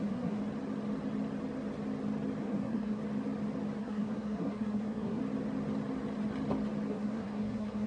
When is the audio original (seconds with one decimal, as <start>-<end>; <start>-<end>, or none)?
0.4-2.4; 3.0-3.8; 5.2-6.9